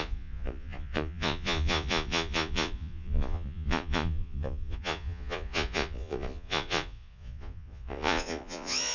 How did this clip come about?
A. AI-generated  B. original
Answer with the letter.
A